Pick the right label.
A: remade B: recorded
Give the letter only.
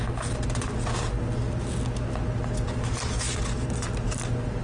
B